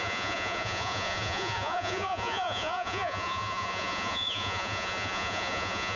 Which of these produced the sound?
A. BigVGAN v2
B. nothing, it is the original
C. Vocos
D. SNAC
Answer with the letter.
C